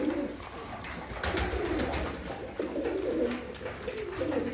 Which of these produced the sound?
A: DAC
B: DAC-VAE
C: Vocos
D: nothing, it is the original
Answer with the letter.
D